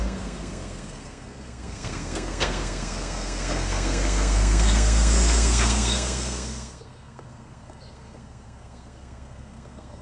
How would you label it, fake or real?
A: fake